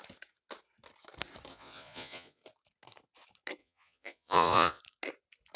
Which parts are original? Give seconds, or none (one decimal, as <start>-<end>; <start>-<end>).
0.0-1.5; 2.4-3.6; 4.8-5.6